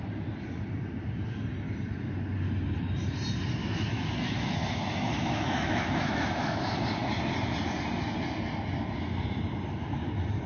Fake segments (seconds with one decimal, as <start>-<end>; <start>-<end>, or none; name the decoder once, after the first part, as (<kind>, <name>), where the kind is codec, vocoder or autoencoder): 3.6-6.6 (autoencoder, DAC-VAE)